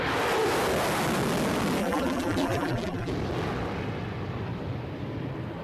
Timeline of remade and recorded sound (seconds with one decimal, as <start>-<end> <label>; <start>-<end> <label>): 0.0-1.8 recorded; 1.8-3.1 remade; 3.1-5.6 recorded